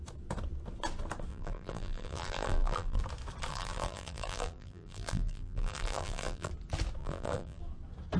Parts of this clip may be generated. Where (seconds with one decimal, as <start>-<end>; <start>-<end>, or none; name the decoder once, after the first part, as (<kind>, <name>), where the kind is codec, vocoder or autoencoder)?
1.3-3.0 (vocoder, BigVGAN v2); 3.5-6.5; 7.0-7.6